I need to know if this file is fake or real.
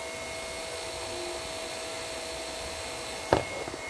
real